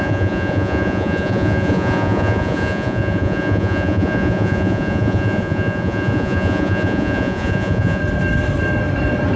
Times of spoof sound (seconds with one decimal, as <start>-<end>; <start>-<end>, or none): 0.0-8.0